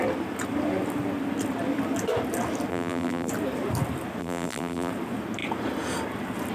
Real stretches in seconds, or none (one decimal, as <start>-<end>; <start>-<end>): 0.0-2.7; 3.3-4.2; 4.9-6.5